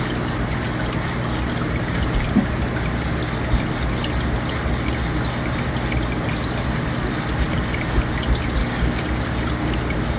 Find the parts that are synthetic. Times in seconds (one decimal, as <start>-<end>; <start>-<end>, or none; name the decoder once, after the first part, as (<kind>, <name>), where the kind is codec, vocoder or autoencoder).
8.6-9.2 (codec, DAC)